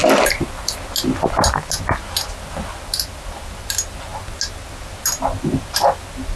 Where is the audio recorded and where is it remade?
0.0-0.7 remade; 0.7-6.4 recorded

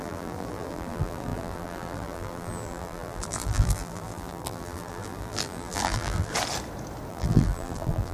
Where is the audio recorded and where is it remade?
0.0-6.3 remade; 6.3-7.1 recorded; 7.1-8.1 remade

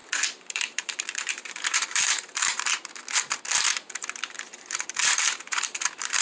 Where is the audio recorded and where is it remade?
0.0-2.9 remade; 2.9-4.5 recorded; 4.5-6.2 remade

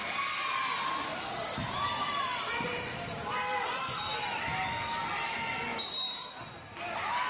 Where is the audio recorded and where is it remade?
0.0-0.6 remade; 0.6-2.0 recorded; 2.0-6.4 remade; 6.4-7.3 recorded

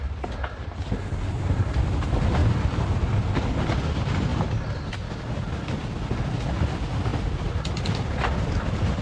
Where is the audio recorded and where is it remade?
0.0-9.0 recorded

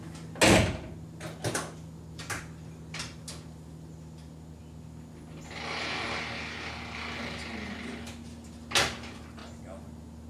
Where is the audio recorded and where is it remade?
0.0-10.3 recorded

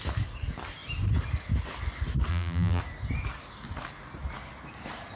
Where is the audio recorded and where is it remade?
0.0-2.3 recorded; 2.3-2.8 remade; 2.8-5.2 recorded